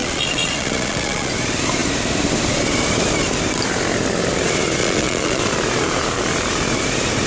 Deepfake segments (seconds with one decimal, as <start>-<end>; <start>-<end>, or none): 0.0-1.3; 4.8-5.4